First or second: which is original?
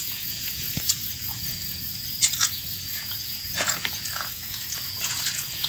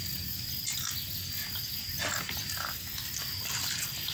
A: second